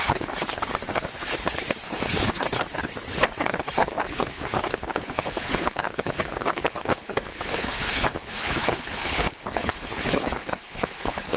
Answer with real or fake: fake